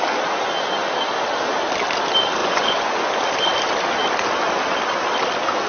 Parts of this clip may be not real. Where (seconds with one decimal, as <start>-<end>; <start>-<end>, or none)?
2.4-3.1